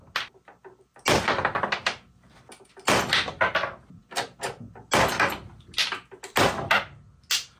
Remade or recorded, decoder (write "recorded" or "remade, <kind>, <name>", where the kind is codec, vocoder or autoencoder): recorded